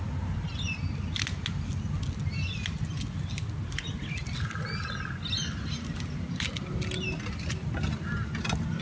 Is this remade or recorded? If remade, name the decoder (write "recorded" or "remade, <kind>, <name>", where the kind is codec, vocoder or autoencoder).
recorded